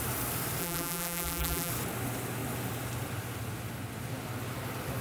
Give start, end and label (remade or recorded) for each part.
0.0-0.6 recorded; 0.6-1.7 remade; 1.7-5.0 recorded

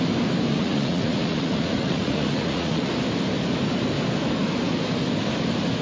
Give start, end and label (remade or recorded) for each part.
0.0-0.5 recorded; 0.5-2.9 remade; 2.9-5.8 recorded

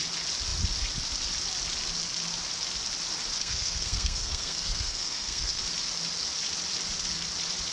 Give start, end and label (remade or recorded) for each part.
0.0-3.3 recorded; 3.3-5.6 remade; 5.6-7.7 recorded

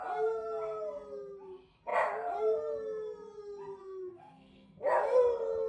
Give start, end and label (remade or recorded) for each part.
0.0-3.8 recorded; 3.8-4.8 remade; 4.8-5.7 recorded

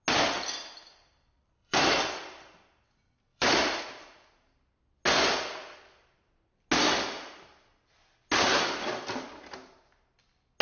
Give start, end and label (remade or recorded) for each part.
0.0-0.9 recorded; 0.9-2.0 remade; 2.0-3.3 recorded; 3.3-3.8 remade; 3.8-10.6 recorded

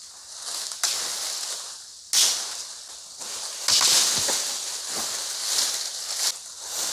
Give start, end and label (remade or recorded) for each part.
0.0-6.9 recorded